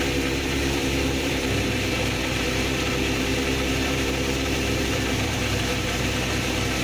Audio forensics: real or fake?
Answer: fake